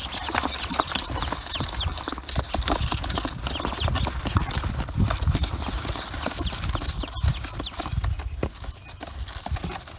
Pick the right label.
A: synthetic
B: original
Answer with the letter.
B